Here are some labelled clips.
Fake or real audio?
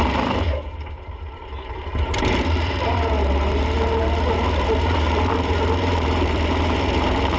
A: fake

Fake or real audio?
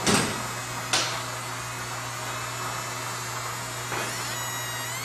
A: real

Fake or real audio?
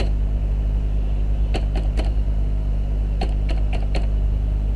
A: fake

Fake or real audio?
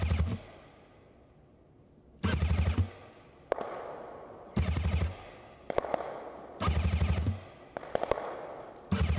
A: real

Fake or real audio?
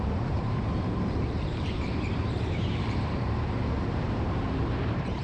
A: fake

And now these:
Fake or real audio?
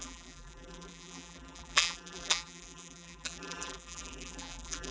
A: fake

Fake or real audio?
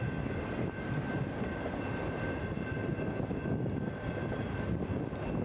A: real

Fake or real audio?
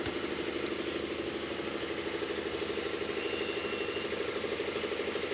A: real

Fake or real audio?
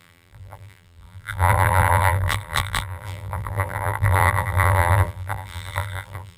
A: fake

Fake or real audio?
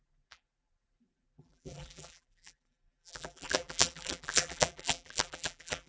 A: fake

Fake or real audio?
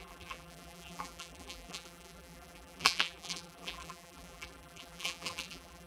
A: fake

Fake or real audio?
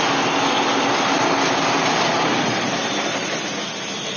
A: real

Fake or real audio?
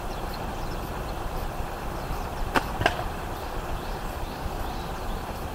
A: fake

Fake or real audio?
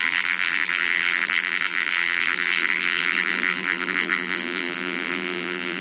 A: fake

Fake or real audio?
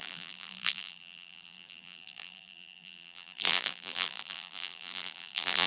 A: fake